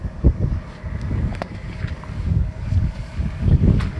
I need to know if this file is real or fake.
fake